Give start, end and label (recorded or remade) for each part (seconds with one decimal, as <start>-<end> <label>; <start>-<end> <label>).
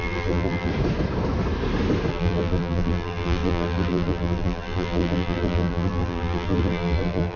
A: 0.0-0.7 remade; 0.7-2.1 recorded; 2.1-7.4 remade